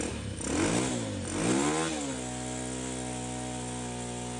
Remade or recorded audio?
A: recorded